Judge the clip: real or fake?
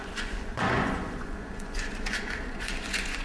fake